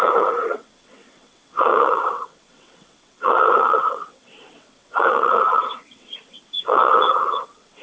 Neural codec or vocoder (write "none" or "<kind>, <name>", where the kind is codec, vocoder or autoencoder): vocoder, WaveNeXt